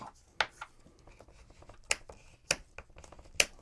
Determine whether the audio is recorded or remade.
recorded